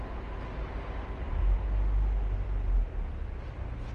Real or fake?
real